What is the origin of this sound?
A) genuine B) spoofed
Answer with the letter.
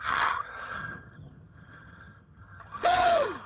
B